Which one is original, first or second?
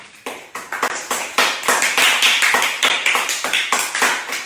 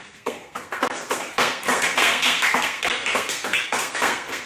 first